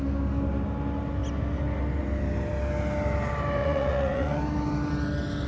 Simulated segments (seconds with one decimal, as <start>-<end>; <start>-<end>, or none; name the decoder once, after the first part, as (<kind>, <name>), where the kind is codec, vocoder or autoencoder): 3.6-4.4 (vocoder, Vocos)